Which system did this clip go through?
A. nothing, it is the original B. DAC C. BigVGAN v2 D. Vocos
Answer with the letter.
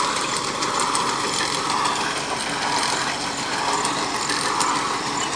A